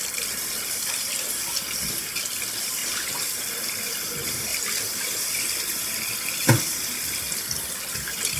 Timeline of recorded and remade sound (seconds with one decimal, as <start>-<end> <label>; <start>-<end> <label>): 0.0-2.8 recorded; 2.8-3.4 remade; 3.4-4.5 recorded; 4.5-7.2 remade; 7.2-8.4 recorded